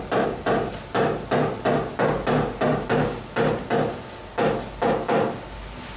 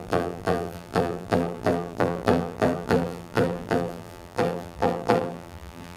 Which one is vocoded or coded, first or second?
second